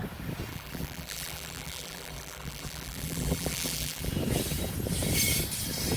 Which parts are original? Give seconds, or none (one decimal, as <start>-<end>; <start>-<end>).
0.0-0.5; 4.1-6.0